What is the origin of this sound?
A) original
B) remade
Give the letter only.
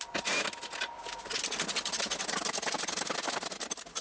A